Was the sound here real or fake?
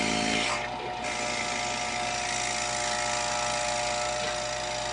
real